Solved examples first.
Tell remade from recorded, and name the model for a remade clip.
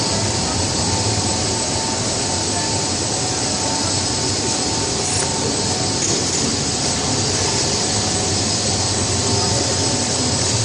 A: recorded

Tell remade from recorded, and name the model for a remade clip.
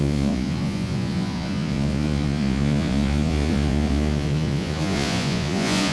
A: remade, vocoder, Vocos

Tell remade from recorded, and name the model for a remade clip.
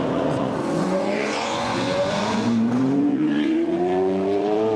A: remade, vocoder, Vocos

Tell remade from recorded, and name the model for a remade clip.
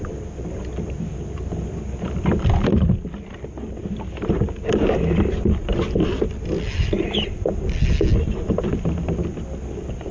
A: recorded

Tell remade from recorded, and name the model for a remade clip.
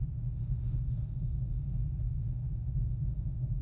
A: remade, autoencoder, DAC-VAE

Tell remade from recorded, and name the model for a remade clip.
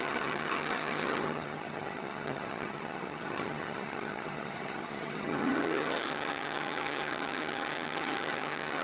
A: remade, vocoder, HiFi-GAN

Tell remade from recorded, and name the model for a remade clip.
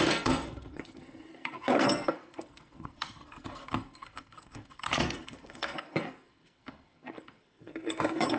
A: remade, codec, SNAC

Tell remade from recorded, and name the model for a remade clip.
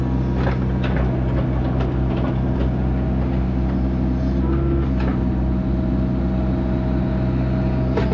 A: recorded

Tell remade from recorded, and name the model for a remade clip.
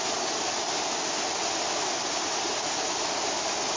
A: recorded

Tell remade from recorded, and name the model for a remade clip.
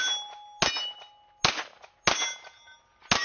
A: recorded